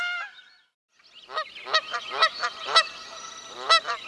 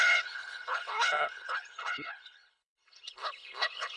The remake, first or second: second